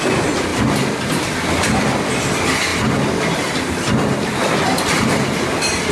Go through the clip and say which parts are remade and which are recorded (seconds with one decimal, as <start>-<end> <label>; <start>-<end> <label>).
0.0-5.9 recorded